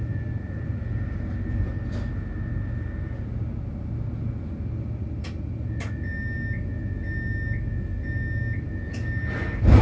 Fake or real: real